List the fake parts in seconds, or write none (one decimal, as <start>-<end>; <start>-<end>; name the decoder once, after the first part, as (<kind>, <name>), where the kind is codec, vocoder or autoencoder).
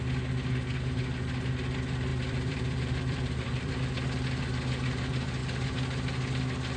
2.1-3.7 (vocoder, BigVGAN v2)